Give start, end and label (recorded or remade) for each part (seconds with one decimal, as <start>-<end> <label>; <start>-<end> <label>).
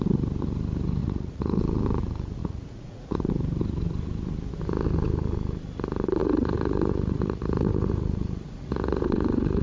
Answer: 0.0-1.0 recorded; 1.0-1.6 remade; 1.6-2.4 recorded; 2.4-3.3 remade; 3.3-6.2 recorded; 6.2-9.6 remade